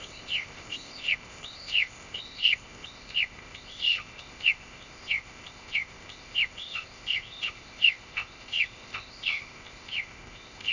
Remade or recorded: remade